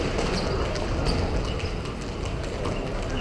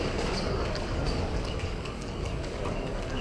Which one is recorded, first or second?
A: first